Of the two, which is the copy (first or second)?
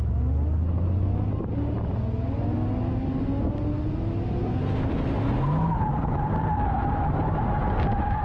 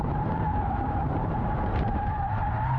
second